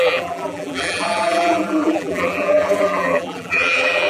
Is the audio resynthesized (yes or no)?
yes